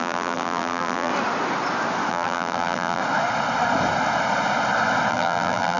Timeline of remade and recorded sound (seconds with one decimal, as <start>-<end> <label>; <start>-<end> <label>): 0.0-1.1 remade; 1.1-2.1 recorded; 2.1-3.0 remade; 3.0-5.1 recorded; 5.1-5.8 remade